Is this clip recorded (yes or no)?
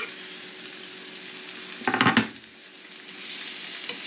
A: yes